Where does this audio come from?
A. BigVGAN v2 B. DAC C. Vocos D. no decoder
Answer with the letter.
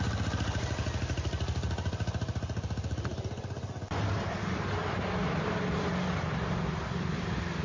D